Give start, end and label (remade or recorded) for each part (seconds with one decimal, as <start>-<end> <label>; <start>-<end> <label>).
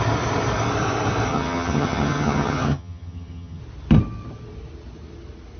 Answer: 0.0-1.3 recorded; 1.3-3.6 remade; 3.6-5.6 recorded